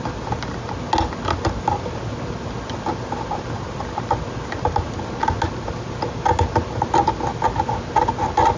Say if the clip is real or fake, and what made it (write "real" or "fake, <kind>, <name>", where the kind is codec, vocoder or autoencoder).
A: real